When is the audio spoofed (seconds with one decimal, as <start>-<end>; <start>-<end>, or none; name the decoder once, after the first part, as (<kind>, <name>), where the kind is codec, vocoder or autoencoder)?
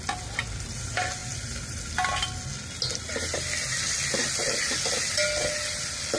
none